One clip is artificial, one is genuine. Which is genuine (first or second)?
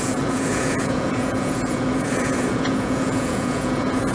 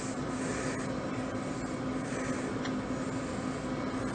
second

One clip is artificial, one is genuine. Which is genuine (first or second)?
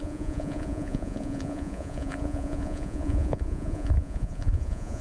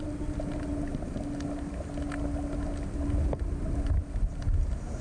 second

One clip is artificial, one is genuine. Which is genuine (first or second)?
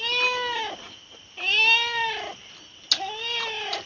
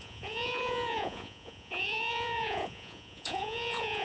first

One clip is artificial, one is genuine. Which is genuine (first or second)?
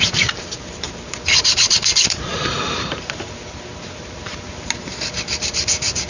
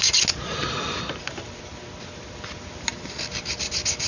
second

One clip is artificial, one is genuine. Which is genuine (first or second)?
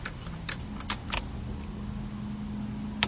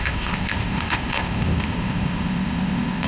first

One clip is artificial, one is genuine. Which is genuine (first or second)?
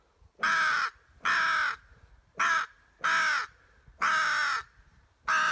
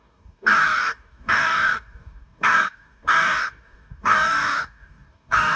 first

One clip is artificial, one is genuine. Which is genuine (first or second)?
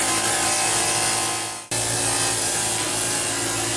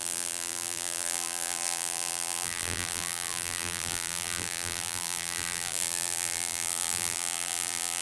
first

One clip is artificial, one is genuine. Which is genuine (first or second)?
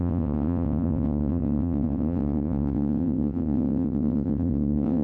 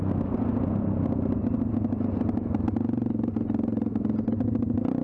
second